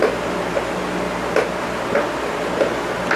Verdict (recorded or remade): recorded